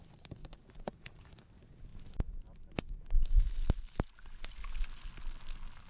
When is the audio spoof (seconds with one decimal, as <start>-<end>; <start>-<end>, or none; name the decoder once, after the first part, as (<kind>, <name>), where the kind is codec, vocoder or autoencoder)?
0.4-1.2 (vocoder, Vocos)